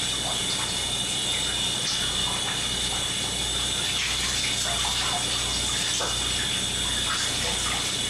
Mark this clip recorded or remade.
recorded